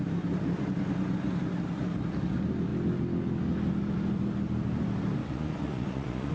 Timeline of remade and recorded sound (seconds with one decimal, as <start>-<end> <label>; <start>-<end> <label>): 0.0-5.2 recorded; 5.2-6.3 remade